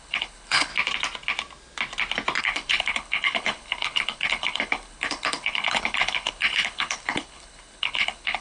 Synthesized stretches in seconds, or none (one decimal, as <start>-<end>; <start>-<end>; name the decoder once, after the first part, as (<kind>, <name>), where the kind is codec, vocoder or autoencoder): 0.0-0.7 (codec, HILCodec); 2.4-8.4

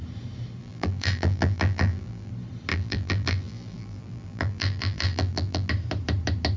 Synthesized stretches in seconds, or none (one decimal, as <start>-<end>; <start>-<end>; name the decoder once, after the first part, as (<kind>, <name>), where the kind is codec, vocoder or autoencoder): 0.6-2.3 (vocoder, BigVGAN v2); 2.7-5.7

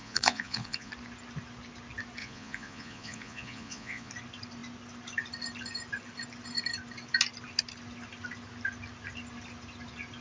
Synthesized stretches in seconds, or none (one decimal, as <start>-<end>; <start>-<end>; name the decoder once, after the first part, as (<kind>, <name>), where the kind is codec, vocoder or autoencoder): 0.0-0.9 (vocoder, Vocos); 2.2-4.1

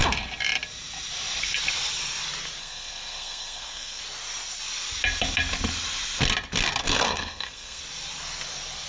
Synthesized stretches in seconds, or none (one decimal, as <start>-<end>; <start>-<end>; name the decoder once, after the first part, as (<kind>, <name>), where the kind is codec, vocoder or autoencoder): 2.6-4.0 (codec, SNAC); 6.8-7.8